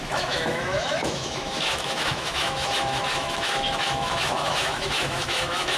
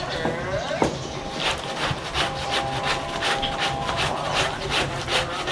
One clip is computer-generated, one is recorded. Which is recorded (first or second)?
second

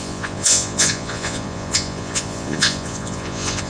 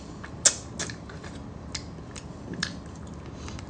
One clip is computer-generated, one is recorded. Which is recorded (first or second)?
second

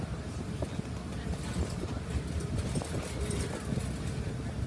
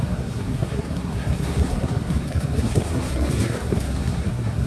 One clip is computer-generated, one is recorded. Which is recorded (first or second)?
first